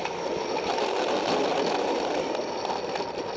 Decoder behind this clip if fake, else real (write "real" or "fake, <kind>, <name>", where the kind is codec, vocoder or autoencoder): real